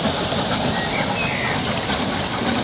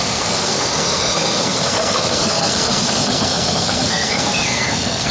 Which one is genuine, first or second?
first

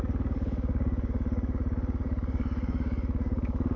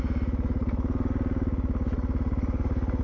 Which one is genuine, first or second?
second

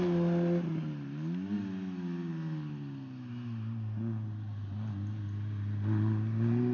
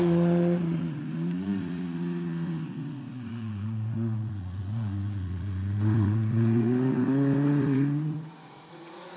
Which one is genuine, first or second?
first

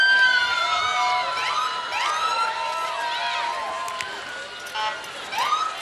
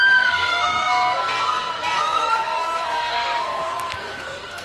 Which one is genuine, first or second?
first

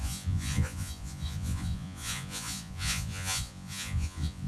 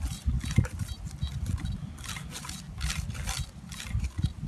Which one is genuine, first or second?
second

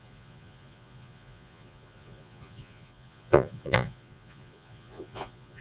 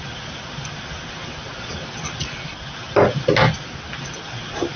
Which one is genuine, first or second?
second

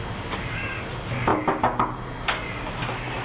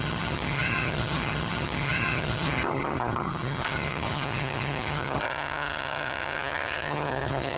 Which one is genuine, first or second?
first